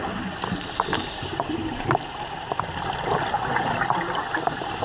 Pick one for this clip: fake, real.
real